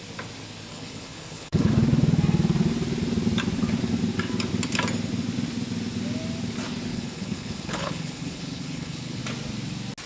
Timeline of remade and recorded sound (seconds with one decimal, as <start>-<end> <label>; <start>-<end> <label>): 0.0-0.7 recorded; 0.7-1.7 remade; 1.7-6.9 recorded; 6.9-9.2 remade; 9.2-10.1 recorded